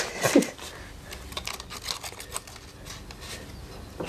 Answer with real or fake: real